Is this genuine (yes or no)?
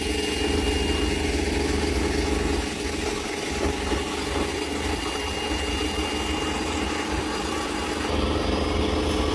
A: yes